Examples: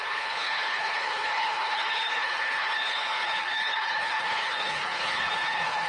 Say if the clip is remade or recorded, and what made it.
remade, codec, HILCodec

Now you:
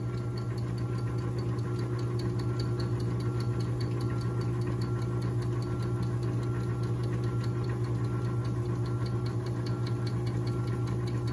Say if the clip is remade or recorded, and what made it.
recorded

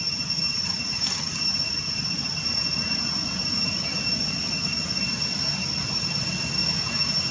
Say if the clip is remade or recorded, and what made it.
recorded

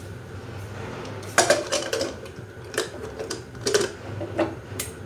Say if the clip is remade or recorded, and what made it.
remade, vocoder, BigVGAN v2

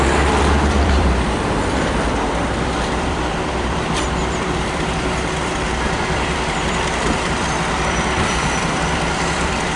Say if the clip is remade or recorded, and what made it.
remade, vocoder, BigVGAN v2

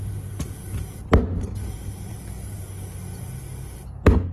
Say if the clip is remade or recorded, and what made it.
recorded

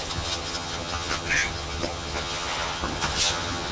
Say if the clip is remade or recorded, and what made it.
remade, vocoder, HiFi-GAN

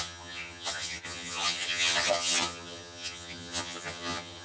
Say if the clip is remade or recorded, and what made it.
remade, vocoder, HiFi-GAN